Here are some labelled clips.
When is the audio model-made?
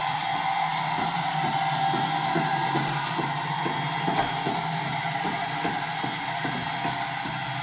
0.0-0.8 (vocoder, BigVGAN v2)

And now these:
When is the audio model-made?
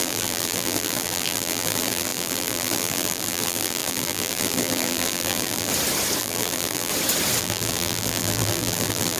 0.0-5.7 (vocoder, BigVGAN v2); 6.2-6.9; 7.4-9.2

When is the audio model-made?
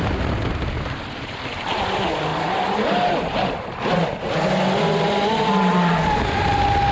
2.3-3.7 (vocoder, BigVGAN v2)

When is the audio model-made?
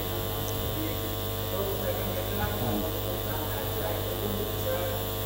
1.7-4.6 (vocoder, BigVGAN v2)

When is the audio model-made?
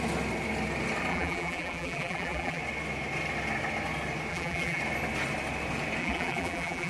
1.1-2.6 (vocoder, BigVGAN v2); 4.3-4.8; 6.0-6.9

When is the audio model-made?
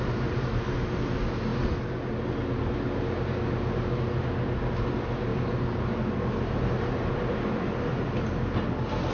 none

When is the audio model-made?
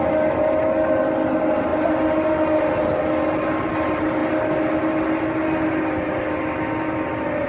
none